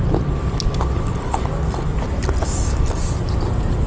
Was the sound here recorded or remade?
recorded